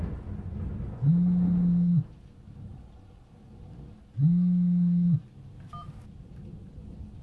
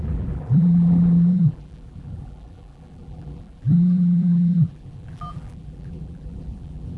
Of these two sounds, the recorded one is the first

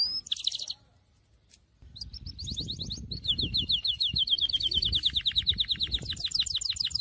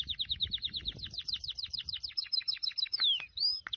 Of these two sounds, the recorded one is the first